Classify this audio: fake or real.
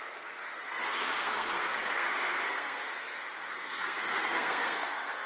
fake